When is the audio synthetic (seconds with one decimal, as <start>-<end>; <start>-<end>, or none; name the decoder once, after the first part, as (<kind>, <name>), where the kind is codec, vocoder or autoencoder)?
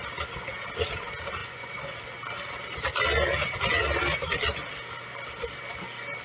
1.4-2.0 (vocoder, Vocos)